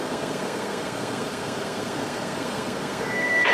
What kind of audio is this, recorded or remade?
remade